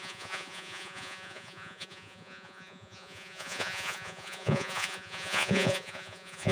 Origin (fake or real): fake